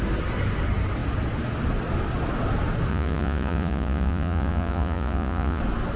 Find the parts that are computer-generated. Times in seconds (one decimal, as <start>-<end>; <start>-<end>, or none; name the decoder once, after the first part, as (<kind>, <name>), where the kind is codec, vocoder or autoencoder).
2.9-5.6 (vocoder, Vocos)